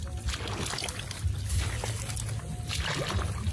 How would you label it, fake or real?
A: real